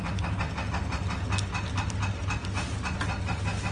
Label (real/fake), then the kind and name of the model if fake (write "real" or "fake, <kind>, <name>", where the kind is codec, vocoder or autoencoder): real